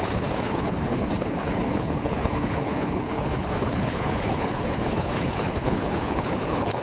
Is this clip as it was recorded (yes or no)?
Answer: no